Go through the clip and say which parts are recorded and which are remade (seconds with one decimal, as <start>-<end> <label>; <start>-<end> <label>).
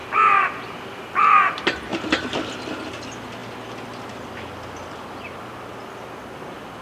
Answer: 0.0-1.2 remade; 1.2-1.9 recorded; 1.9-2.9 remade; 2.9-6.8 recorded